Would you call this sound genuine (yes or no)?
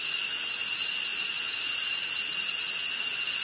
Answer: yes